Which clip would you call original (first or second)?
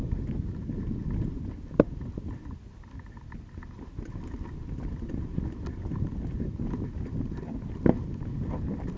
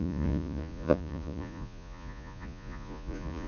first